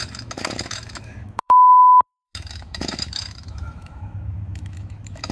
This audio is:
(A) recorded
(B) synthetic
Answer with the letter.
B